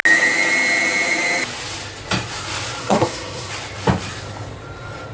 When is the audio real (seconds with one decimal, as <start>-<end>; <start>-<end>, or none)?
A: 0.0-2.8; 3.5-5.1